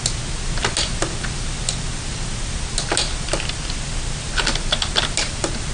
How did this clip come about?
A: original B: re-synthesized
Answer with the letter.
A